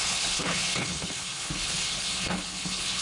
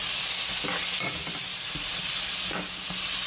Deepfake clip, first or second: first